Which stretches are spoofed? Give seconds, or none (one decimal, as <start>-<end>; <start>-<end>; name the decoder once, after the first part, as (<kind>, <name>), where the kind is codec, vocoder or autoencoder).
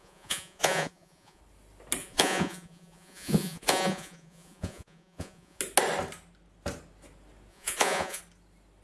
0.0-1.4 (vocoder, Vocos); 2.0-5.6; 7.5-8.2